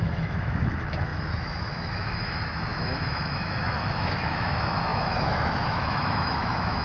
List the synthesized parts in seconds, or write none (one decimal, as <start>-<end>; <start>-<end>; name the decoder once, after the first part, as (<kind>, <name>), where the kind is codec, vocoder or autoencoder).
0.0-6.8 (autoencoder, DAC-VAE)